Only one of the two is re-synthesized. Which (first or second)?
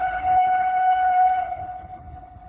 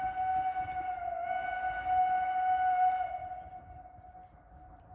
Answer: first